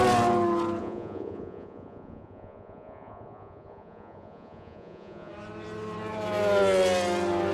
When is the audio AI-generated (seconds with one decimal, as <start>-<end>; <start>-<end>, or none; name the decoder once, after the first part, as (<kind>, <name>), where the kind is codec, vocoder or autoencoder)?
0.8-5.3 (vocoder, Vocos)